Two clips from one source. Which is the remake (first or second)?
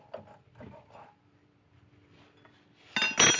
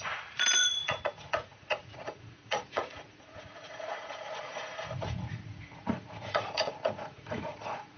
second